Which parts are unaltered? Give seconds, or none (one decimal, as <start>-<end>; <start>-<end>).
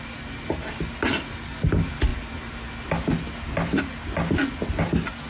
0.0-5.3